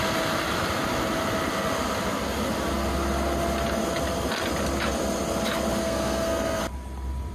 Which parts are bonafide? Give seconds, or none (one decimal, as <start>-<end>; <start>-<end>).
0.0-5.8; 6.6-7.3